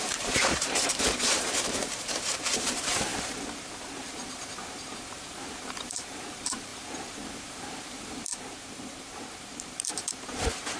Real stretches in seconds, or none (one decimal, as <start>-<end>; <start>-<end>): 6.7-7.3